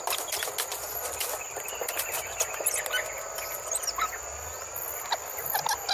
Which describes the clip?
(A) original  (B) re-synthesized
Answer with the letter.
A